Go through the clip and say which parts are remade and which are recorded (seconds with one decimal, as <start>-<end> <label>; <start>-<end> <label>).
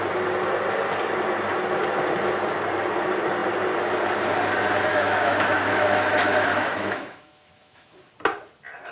0.0-4.9 recorded; 4.9-8.0 remade; 8.0-8.9 recorded